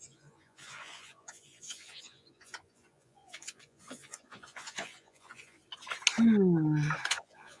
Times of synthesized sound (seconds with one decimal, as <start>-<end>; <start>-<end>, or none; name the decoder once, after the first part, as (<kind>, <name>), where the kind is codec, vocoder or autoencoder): 0.0-5.6 (vocoder, Vocos); 7.1-7.6